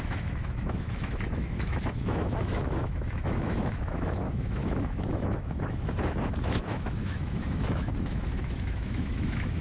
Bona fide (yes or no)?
no